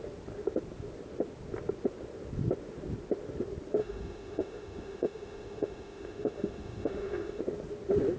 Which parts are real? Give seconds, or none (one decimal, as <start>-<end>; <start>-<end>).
0.0-3.8; 7.4-8.2